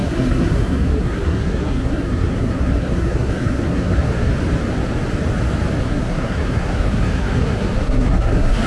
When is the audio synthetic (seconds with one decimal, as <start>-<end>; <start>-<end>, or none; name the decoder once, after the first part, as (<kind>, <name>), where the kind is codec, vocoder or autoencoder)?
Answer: 0.0-4.3 (codec, SNAC); 5.8-8.7